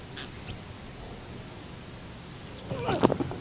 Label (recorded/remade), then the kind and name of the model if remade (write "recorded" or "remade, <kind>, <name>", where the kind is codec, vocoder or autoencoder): recorded